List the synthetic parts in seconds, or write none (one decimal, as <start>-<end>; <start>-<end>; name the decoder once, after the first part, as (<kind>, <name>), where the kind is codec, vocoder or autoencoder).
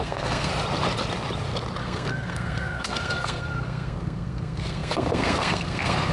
0.0-0.5 (codec, SNAC); 1.8-6.1